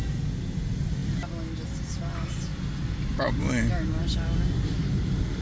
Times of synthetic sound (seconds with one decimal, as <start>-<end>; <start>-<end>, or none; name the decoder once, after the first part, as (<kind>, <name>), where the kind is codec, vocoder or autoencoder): none